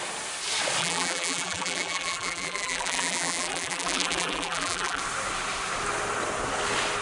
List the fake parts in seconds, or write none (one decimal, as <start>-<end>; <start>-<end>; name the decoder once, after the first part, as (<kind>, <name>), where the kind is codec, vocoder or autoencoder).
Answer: 0.8-5.0 (vocoder, BigVGAN v2)